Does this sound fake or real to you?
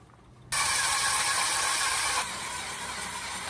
real